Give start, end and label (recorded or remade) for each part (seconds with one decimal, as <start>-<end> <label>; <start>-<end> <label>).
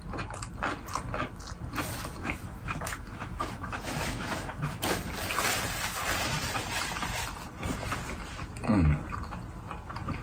0.0-2.2 recorded; 2.2-4.8 remade; 4.8-10.2 recorded